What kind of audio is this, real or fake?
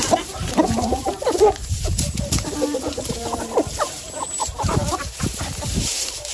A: fake